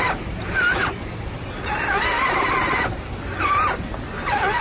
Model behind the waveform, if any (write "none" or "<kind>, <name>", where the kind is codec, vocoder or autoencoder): none